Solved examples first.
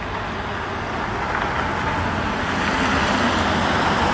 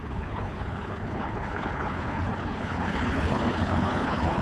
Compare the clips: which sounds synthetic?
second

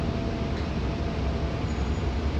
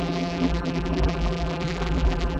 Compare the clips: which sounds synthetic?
second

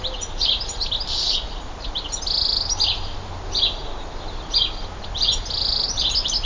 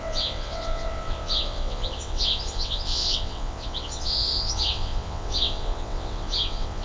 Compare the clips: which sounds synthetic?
second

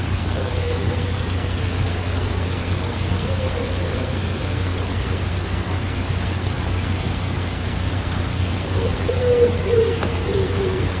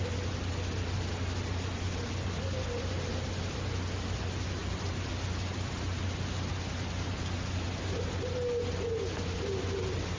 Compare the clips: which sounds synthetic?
first